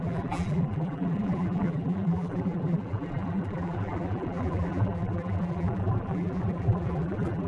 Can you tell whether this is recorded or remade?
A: remade